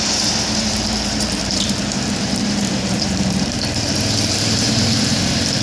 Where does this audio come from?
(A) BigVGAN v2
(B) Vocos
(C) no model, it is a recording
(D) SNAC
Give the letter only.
A